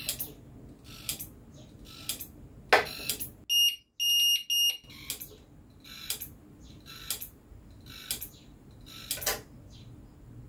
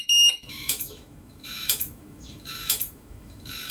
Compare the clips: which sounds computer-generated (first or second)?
second